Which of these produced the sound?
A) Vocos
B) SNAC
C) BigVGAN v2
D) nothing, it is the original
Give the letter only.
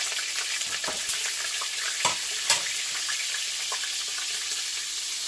D